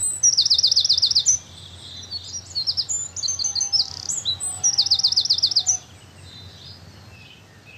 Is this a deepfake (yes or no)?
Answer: no